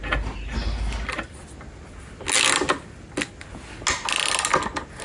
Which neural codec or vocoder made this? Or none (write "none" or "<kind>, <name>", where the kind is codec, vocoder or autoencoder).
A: none